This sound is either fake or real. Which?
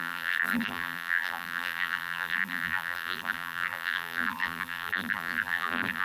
fake